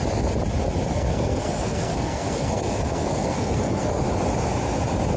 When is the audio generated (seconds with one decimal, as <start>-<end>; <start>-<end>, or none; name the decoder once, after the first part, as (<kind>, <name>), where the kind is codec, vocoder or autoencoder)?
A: 0.9-4.0 (codec, SNAC)